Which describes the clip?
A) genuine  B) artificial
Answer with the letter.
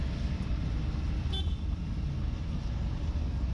A